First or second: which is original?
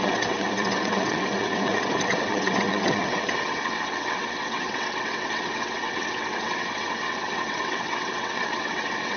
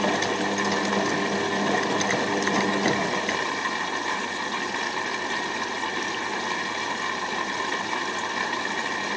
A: second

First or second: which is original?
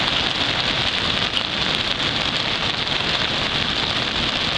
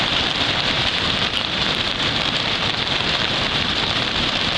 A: first